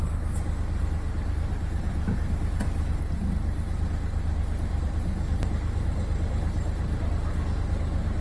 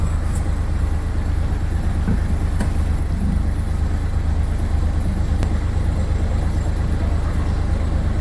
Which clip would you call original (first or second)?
second